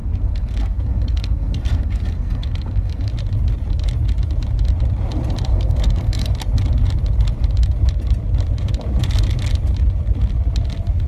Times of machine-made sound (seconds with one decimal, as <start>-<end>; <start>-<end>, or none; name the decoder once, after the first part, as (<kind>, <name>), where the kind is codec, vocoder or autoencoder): 0.0-3.1 (codec, SNAC); 5.5-6.3